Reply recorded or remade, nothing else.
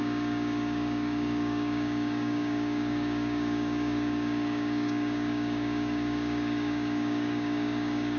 remade